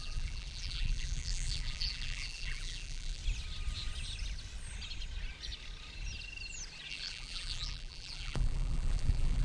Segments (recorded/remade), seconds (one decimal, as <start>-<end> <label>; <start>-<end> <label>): 0.0-3.2 remade; 3.2-6.9 recorded; 6.9-9.4 remade